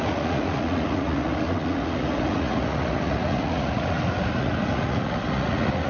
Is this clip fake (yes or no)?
yes